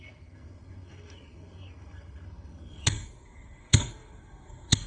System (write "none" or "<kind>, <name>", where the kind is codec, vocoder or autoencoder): codec, SNAC